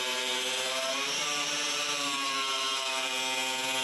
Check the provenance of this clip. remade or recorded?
remade